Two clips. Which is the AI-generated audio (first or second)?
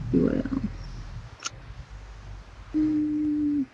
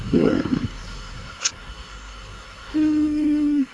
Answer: second